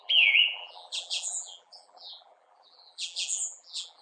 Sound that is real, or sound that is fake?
fake